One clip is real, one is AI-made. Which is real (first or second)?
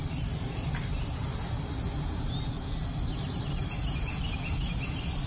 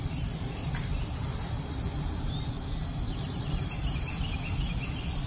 first